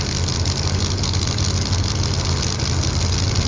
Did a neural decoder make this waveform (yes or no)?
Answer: no